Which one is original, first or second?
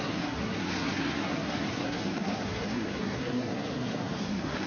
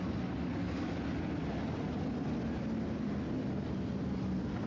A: second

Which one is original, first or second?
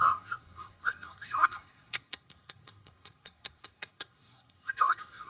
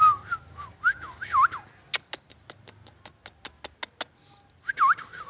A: second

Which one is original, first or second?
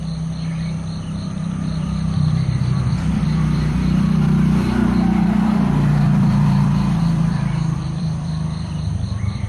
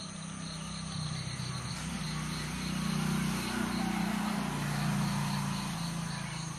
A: second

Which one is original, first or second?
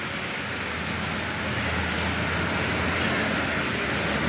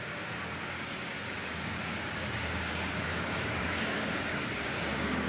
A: first